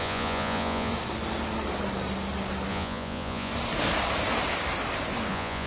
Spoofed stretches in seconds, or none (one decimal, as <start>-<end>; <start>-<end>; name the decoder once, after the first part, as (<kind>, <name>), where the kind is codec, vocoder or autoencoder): 0.0-0.9 (vocoder, Vocos); 2.7-3.5; 5.3-5.7

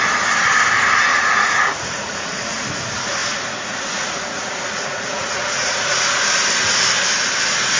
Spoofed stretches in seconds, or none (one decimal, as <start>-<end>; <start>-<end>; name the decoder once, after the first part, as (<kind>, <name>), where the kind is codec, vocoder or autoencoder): 1.1-2.6 (vocoder, Vocos); 3.2-6.2

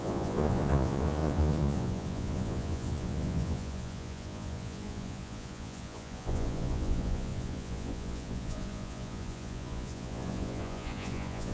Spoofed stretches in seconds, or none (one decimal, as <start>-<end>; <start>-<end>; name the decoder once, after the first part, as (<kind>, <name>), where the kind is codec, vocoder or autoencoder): 0.0-11.5 (vocoder, Vocos)

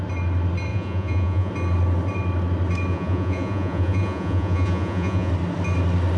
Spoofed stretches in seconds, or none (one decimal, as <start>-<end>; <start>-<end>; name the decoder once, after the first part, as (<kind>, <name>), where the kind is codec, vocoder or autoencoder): 0.7-1.5 (vocoder, Vocos); 2.9-5.3

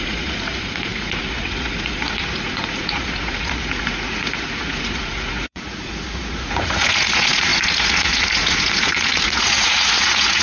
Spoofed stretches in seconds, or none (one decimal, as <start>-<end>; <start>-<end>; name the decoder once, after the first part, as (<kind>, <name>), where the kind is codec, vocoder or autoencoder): 0.0-10.4 (vocoder, Vocos)

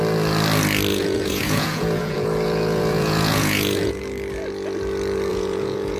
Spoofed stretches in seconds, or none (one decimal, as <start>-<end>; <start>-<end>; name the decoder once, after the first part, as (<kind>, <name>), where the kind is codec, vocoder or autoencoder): 0.9-4.0 (vocoder, Vocos); 5.3-6.0

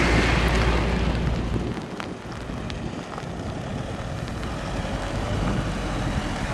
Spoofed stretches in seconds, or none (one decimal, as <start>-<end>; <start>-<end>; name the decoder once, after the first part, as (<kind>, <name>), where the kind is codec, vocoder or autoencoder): none